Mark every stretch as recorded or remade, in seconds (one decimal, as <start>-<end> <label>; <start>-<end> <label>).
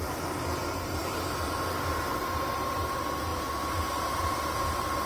0.0-3.3 recorded; 3.3-4.6 remade; 4.6-5.1 recorded